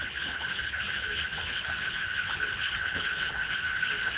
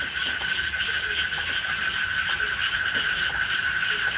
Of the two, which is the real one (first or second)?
second